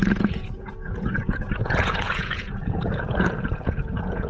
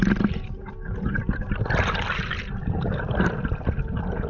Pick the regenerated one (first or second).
first